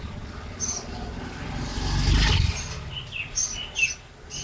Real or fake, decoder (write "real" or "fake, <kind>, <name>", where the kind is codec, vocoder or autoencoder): real